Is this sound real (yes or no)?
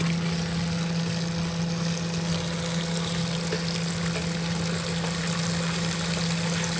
yes